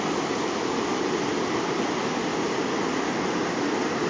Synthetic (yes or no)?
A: no